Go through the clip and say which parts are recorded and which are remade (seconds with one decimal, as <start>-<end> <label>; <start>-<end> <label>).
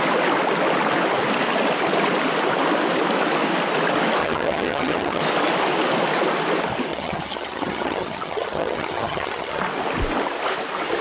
0.0-4.2 recorded; 4.2-5.2 remade; 5.2-6.9 recorded; 6.9-9.6 remade; 9.6-11.0 recorded